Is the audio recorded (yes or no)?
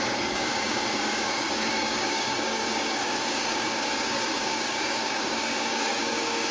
no